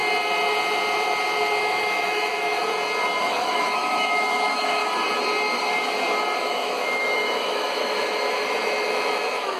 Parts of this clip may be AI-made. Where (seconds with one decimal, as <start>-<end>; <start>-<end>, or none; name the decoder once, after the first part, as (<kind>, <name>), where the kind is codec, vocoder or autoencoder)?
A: 1.6-2.6 (autoencoder, DAC-VAE); 3.2-4.8; 6.4-9.6